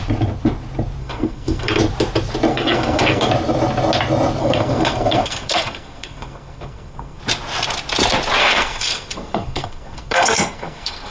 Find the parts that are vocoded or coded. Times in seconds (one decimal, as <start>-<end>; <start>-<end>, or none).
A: 1.0-1.8; 2.5-3.3; 4.4-7.2; 8.4-11.1